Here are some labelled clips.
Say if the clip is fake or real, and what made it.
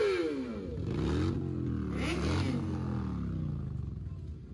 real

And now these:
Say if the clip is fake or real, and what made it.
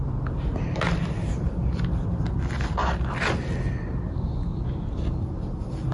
real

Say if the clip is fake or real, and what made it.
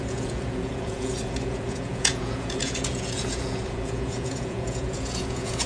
fake, vocoder, Vocos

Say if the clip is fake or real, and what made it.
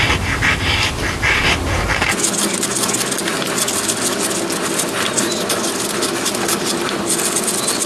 real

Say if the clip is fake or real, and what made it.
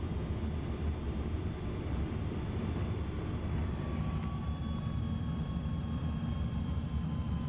real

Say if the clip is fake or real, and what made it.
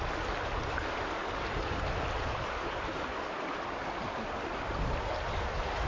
real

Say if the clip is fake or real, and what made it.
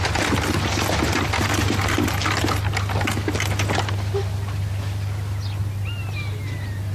real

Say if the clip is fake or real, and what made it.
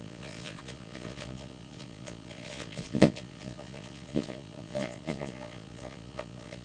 fake, vocoder, Vocos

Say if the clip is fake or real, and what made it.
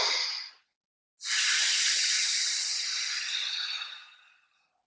real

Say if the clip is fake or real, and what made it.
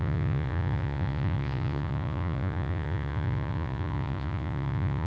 fake, vocoder, Vocos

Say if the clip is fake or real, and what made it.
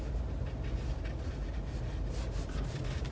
real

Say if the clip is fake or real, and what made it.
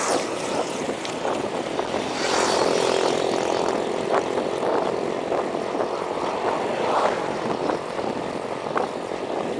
real